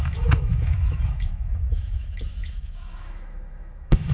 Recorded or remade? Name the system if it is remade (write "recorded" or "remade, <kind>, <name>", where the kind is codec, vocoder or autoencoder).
remade, autoencoder, DAC-VAE